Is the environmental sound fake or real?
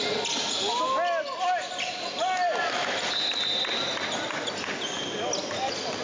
real